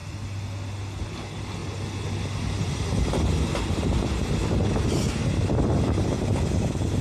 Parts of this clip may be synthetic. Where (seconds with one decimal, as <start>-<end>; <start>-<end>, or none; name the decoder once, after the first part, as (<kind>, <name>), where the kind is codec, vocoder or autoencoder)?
none